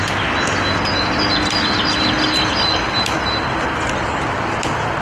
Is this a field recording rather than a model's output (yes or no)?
yes